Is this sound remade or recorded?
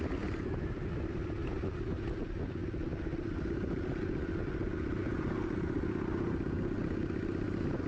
recorded